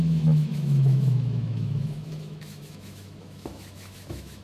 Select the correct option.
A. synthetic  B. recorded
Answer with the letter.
A